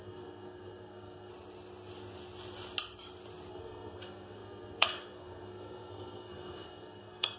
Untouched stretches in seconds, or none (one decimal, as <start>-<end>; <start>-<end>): 1.3-3.5